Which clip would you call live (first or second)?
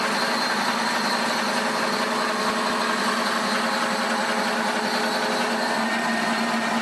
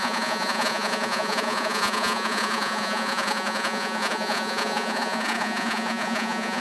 first